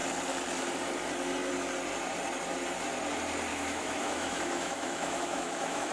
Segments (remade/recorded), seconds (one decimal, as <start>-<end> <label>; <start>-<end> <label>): 0.0-3.5 recorded; 3.5-5.9 remade